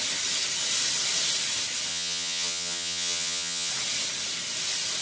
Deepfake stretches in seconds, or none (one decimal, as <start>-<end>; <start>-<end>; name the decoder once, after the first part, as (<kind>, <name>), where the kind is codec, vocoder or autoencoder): 1.9-3.7 (vocoder, HiFi-GAN)